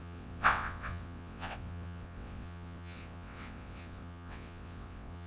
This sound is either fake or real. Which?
fake